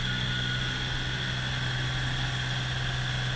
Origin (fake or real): real